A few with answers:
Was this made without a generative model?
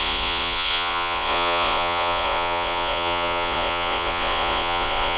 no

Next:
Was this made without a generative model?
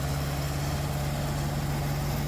yes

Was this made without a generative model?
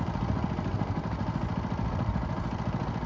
yes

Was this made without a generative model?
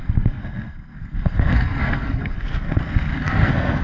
no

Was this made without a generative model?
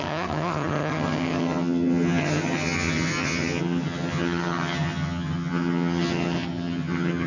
no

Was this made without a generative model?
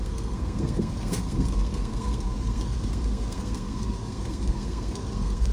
no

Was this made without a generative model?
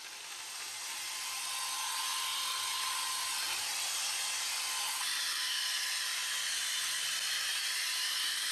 yes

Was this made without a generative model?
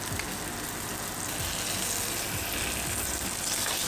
yes